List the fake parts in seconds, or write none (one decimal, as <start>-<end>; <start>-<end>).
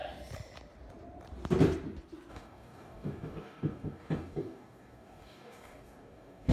2.3-6.5